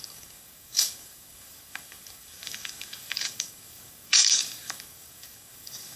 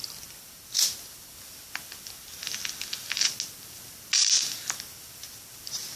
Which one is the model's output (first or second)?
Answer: first